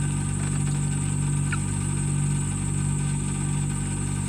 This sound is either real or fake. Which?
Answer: real